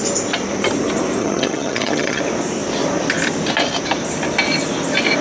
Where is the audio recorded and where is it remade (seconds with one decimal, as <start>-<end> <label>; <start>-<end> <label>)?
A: 0.0-1.2 recorded; 1.2-2.2 remade; 2.2-5.2 recorded